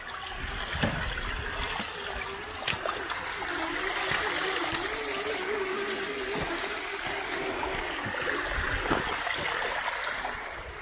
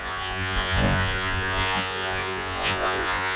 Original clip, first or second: first